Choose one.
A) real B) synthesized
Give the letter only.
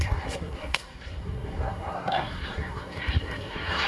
B